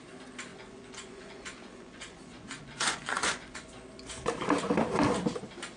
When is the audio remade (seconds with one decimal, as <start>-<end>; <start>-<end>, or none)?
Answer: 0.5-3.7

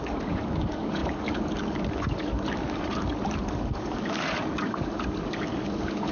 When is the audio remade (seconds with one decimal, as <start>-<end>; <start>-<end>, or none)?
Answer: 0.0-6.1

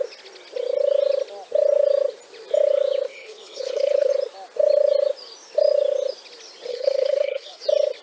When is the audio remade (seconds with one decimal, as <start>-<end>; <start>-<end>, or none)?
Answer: 3.1-4.1; 6.7-7.6